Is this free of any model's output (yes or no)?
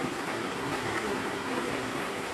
no